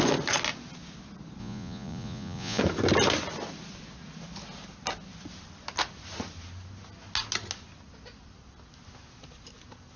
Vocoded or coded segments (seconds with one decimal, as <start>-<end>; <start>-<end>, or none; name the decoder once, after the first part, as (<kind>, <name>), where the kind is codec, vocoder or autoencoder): 1.4-2.6 (vocoder, Vocos)